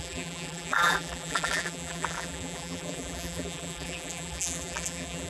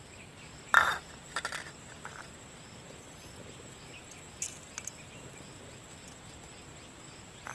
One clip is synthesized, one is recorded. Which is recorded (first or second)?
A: second